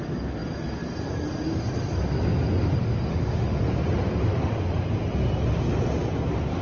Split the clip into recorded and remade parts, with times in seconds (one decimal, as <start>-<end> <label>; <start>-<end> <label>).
0.0-3.1 recorded; 3.1-3.6 remade; 3.6-6.6 recorded